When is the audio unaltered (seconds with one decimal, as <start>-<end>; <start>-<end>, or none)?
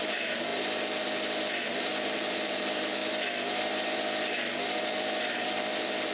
3.0-4.8